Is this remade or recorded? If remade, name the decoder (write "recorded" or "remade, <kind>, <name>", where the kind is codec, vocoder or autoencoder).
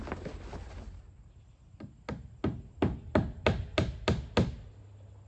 recorded